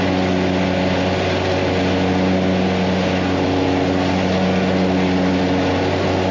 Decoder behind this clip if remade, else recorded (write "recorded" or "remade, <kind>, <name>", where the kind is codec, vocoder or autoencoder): recorded